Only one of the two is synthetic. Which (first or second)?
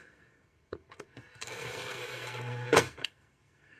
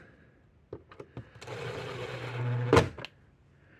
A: first